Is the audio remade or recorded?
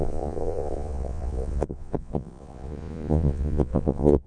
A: remade